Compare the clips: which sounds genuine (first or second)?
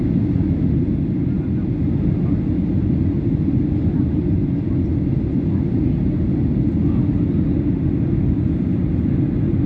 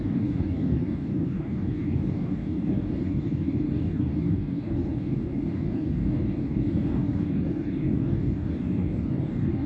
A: first